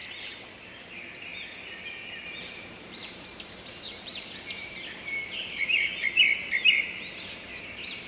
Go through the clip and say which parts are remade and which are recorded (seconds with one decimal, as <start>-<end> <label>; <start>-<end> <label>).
0.0-0.5 recorded; 0.5-1.3 remade; 1.3-2.2 recorded; 2.2-5.9 remade; 5.9-6.7 recorded; 6.7-8.1 remade